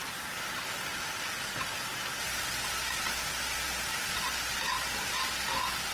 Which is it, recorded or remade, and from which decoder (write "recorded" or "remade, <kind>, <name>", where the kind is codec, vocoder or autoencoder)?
recorded